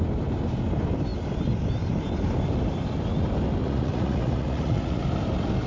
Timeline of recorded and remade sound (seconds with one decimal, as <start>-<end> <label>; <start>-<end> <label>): 0.0-3.6 recorded; 3.6-5.0 remade; 5.0-5.7 recorded